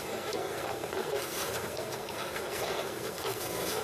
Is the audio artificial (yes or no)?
yes